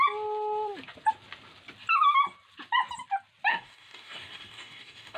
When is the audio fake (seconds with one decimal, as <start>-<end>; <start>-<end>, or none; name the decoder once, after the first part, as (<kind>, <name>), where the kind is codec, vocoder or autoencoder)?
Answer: 3.5-5.2 (codec, DAC)